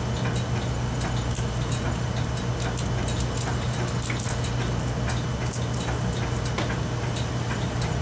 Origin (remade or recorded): recorded